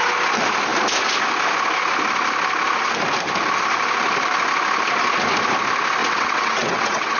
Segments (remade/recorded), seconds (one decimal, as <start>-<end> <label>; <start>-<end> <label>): 0.0-6.0 recorded; 6.0-7.2 remade